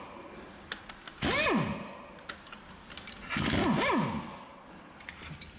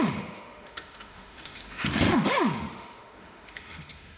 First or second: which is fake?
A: second